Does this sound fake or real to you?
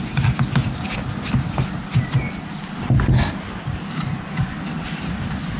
real